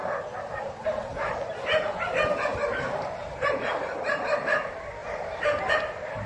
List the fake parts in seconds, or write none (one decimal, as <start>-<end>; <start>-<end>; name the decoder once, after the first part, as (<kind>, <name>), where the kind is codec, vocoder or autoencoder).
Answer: 0.0-1.4 (vocoder, BigVGAN v2); 2.7-4.3